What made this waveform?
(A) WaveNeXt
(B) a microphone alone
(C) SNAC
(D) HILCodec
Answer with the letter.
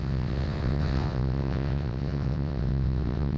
A